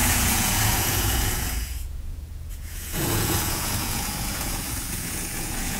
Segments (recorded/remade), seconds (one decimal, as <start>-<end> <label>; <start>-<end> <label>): 0.0-5.8 remade